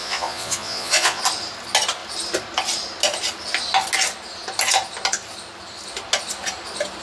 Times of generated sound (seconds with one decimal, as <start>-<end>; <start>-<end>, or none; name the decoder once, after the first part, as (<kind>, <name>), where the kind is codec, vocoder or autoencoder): 0.0-1.2 (vocoder, Vocos)